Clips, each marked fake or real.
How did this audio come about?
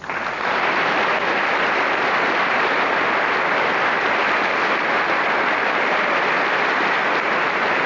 real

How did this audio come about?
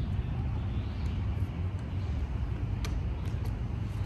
real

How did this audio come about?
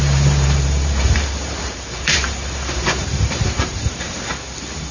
fake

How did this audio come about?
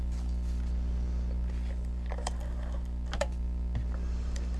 fake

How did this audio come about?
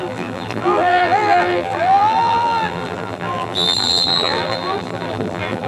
fake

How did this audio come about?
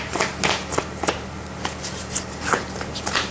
real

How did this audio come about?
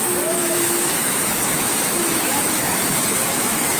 fake